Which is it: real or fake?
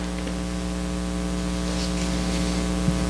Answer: real